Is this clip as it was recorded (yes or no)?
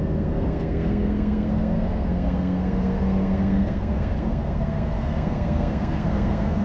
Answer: no